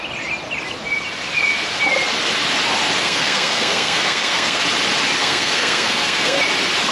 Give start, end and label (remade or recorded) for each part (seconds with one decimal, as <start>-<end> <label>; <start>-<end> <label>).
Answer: 0.0-3.0 recorded; 3.0-4.6 remade; 4.6-5.2 recorded; 5.2-6.4 remade; 6.4-6.9 recorded